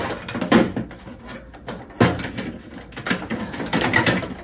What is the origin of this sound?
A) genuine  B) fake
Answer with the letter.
A